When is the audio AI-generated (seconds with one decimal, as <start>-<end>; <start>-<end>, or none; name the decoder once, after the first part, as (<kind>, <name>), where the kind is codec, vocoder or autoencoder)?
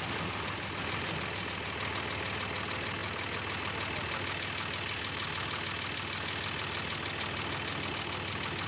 none